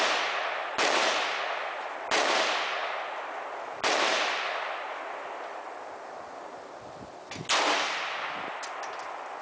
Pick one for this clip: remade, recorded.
recorded